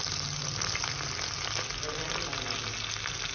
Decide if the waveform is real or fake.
real